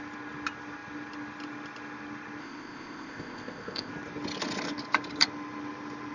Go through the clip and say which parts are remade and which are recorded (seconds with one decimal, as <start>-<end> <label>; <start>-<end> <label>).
0.0-2.4 recorded; 2.4-3.9 remade; 3.9-6.1 recorded